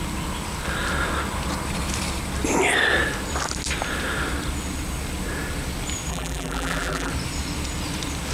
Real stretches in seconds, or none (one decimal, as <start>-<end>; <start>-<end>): 0.0-6.1; 7.1-8.3

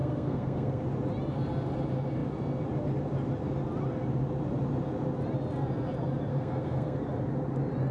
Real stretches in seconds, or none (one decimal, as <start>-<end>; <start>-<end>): 0.8-6.3; 7.0-7.9